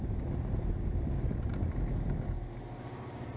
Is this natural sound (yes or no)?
yes